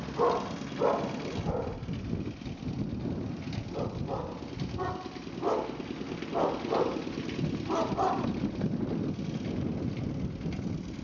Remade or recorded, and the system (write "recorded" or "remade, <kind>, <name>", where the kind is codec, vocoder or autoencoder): recorded